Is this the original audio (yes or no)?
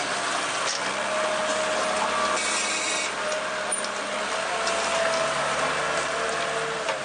yes